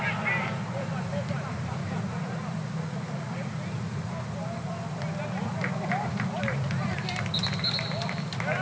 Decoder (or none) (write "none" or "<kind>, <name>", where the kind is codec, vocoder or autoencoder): none